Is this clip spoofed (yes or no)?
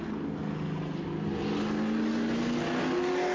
no